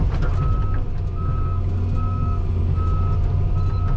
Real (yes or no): yes